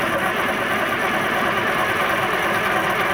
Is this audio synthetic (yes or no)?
no